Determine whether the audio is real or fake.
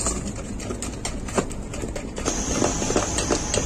real